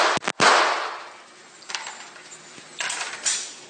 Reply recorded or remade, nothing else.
recorded